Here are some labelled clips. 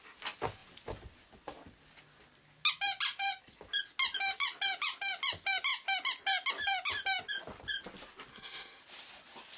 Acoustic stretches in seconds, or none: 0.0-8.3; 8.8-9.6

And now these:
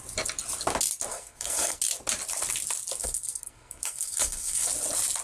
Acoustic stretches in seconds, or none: 0.0-1.1; 1.8-3.0; 4.7-5.2

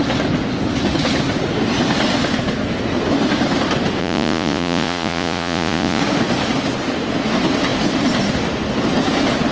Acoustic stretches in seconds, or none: 0.0-4.0; 6.0-9.5